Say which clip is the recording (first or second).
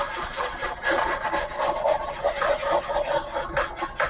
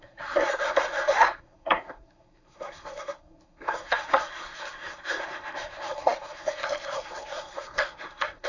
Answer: first